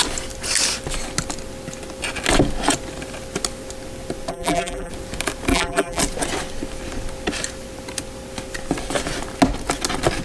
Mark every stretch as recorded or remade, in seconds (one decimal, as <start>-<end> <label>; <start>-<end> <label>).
0.0-4.3 recorded; 4.3-4.9 remade; 4.9-5.5 recorded; 5.5-6.0 remade; 6.0-10.2 recorded

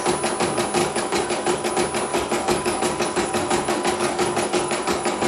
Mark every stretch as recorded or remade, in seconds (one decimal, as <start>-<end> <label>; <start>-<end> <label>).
0.0-0.8 recorded; 0.8-1.7 remade; 1.7-2.1 recorded; 2.1-5.3 remade

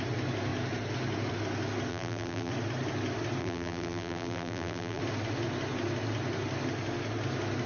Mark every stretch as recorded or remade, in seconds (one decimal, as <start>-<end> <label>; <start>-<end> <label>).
0.0-1.9 recorded; 1.9-2.5 remade; 2.5-3.4 recorded; 3.4-5.0 remade; 5.0-7.7 recorded

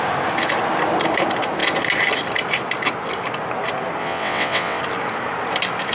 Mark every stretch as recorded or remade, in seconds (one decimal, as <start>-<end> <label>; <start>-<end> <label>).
0.0-4.0 recorded; 4.0-4.8 remade; 4.8-5.9 recorded